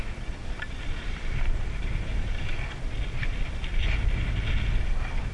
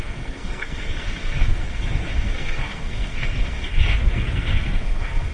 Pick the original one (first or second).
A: first